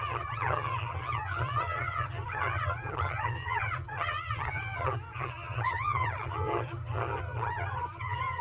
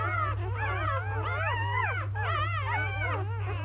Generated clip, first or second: first